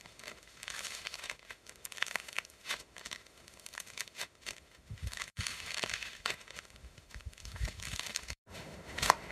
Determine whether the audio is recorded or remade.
remade